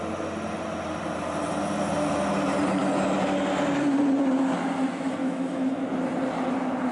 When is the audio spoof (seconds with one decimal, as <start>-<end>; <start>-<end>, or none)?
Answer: 5.2-5.8